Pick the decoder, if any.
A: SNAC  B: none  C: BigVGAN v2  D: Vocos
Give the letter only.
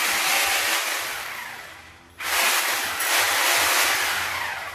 B